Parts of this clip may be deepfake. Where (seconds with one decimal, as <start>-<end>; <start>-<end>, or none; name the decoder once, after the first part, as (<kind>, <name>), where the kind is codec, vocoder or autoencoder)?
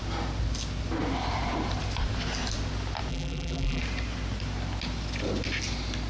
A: 3.1-3.8 (vocoder, BigVGAN v2)